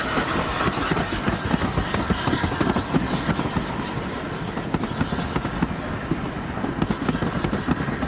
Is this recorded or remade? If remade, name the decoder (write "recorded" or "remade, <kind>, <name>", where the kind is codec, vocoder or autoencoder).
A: recorded